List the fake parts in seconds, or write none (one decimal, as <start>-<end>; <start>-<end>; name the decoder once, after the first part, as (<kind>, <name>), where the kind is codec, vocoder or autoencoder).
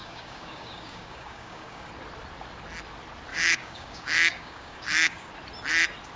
0.0-1.9 (codec, DAC); 3.3-5.3